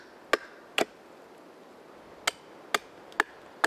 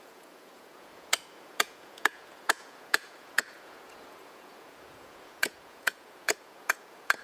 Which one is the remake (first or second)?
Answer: second